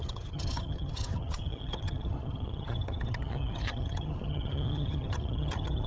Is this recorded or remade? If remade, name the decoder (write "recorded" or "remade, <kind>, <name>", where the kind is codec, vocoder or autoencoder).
remade, vocoder, HiFi-GAN